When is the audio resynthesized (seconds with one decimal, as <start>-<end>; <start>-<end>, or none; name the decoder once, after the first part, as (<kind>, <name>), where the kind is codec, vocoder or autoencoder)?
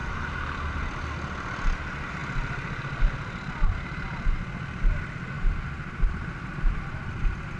none